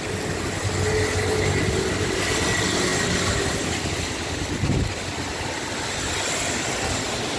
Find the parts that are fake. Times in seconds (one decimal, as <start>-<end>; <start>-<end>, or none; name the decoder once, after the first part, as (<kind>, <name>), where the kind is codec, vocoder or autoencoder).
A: none